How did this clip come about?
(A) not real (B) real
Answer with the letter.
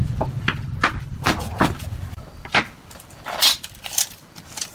B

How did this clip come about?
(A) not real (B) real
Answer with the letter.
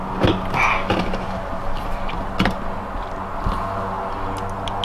B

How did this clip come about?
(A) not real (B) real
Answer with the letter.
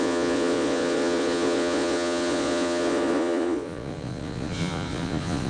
A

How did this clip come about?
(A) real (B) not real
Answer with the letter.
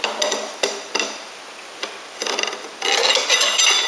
A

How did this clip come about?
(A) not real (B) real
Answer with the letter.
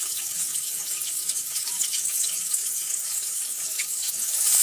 A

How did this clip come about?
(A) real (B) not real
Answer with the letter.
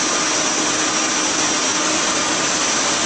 A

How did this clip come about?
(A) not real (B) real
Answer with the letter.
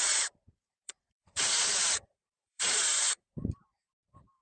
A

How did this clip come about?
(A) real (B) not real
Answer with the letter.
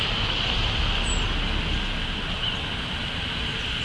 A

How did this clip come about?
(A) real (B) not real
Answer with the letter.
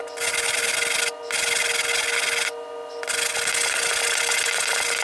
A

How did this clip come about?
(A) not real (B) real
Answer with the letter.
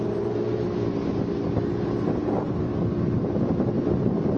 B